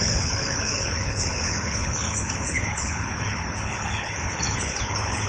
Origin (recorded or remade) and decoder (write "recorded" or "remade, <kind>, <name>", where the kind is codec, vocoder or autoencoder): remade, codec, HILCodec